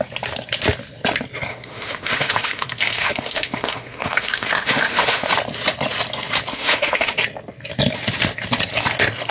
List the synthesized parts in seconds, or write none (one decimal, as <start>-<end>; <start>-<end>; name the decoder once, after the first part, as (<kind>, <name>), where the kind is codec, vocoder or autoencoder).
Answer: 1.5-5.3 (autoencoder, DAC-VAE); 6.5-7.1